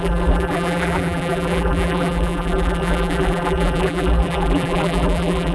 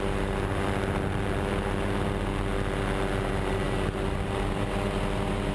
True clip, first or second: second